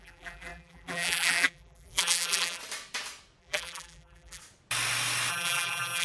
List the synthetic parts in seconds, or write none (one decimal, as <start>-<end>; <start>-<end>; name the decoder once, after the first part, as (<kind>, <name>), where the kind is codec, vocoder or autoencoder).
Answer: 0.0-2.6 (vocoder, BigVGAN v2); 3.4-4.4; 5.3-6.0